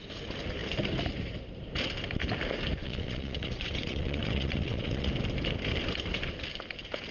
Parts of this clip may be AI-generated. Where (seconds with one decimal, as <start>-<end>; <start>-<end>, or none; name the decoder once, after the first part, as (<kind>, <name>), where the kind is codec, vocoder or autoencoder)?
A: 2.8-5.1 (vocoder, WaveNeXt)